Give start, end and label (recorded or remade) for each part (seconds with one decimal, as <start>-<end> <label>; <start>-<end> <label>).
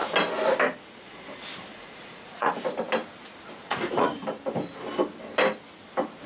0.0-1.7 recorded; 1.7-2.6 remade; 2.6-3.6 recorded; 3.6-4.2 remade; 4.2-6.3 recorded